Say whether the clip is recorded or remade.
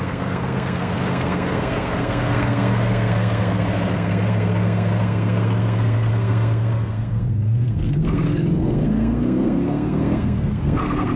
remade